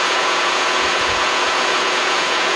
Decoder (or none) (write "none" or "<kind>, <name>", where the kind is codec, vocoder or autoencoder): vocoder, Vocos